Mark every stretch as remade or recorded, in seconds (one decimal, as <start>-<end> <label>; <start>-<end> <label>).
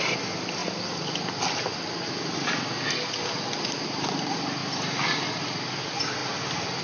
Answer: 0.0-6.8 recorded